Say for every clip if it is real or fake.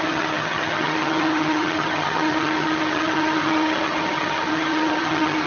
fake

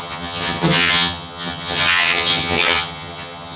fake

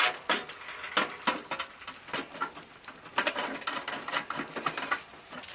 real